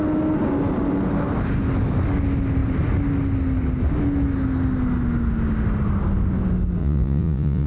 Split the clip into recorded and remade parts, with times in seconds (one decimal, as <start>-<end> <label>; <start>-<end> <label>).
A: 0.0-6.8 recorded; 6.8-7.7 remade